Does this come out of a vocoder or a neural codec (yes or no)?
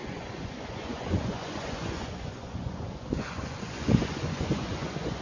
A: yes